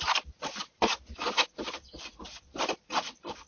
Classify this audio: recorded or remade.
remade